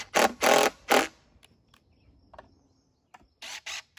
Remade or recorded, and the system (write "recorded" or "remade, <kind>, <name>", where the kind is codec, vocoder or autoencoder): recorded